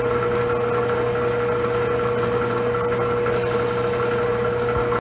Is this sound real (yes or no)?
yes